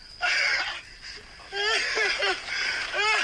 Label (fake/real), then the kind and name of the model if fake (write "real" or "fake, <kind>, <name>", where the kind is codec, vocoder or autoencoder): real